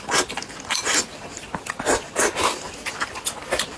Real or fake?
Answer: real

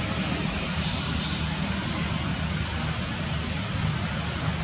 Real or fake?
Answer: real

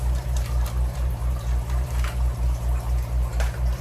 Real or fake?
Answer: fake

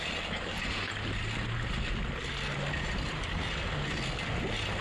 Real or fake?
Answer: real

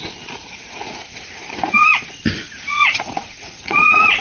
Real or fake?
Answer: fake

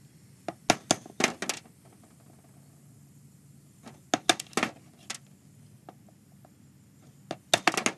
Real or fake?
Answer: real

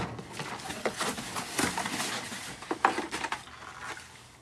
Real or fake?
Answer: real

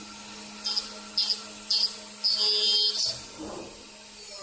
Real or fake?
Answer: real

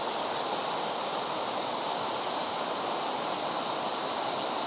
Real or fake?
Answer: real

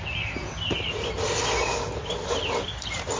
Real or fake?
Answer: real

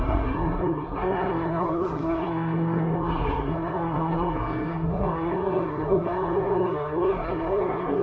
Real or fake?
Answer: fake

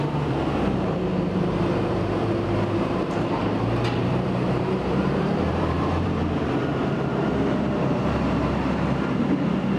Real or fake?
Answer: fake